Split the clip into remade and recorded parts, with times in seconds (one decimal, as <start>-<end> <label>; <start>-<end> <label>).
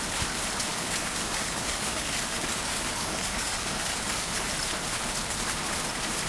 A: 0.0-0.7 recorded; 0.7-4.5 remade; 4.5-6.3 recorded